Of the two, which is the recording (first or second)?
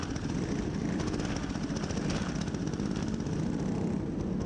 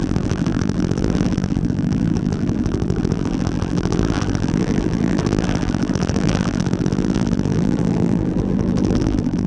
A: first